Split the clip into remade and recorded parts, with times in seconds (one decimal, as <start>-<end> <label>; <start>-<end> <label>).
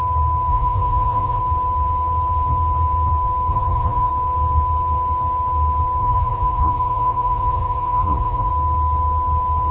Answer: 0.0-0.5 recorded; 0.5-1.4 remade; 1.4-3.5 recorded; 3.5-4.1 remade; 4.1-6.0 recorded; 6.0-8.5 remade; 8.5-9.7 recorded